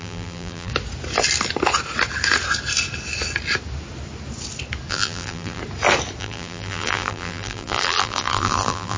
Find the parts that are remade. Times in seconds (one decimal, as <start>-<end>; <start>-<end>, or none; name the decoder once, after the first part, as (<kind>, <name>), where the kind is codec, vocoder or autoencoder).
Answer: 0.0-0.7 (vocoder, BigVGAN v2); 4.9-5.6; 6.2-9.0